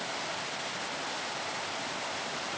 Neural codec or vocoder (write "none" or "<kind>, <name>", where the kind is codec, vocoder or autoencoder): none